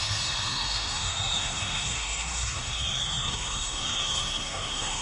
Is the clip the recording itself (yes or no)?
no